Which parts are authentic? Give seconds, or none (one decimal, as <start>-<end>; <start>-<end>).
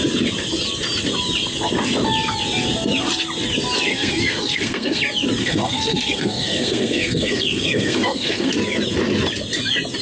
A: 0.0-3.9; 5.0-5.4; 8.5-10.0